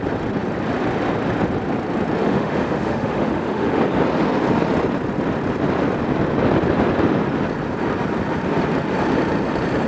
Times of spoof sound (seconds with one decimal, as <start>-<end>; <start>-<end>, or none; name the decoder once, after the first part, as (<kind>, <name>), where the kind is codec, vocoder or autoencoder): 2.2-3.8 (autoencoder, DAC-VAE)